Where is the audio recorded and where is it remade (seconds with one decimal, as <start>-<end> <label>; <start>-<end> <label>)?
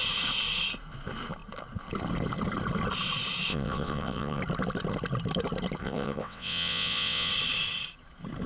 0.0-3.5 recorded; 3.5-4.4 remade; 4.4-5.8 recorded; 5.8-7.3 remade; 7.3-8.5 recorded